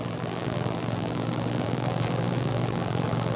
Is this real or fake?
fake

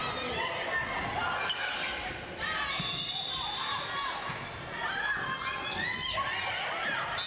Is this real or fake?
real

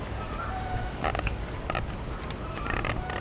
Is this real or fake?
real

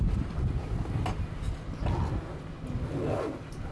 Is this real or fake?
real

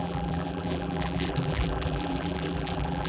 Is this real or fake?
fake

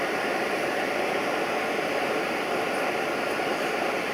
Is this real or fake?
fake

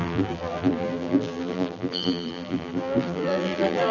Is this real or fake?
fake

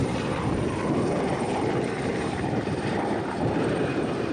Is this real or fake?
fake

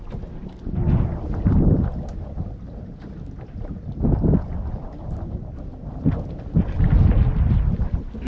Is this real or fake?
real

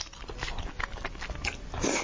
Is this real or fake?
real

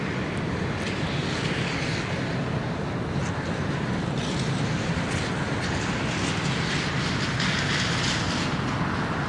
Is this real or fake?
real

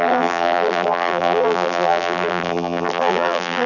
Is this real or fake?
fake